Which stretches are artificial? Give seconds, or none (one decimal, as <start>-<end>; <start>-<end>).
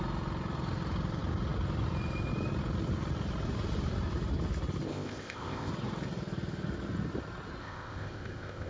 4.9-5.7; 7.6-8.7